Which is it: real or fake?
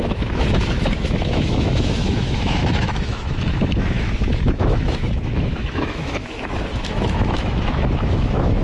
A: fake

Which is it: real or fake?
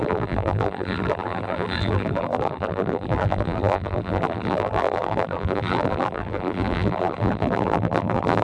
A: fake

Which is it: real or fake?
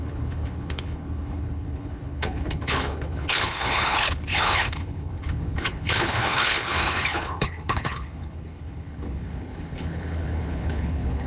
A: fake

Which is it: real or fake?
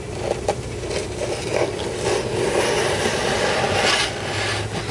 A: real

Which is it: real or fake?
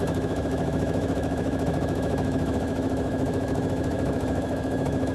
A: fake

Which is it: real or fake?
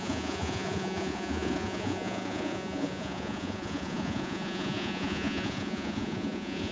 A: fake